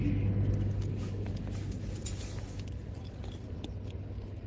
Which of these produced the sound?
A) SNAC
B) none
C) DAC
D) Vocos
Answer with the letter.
B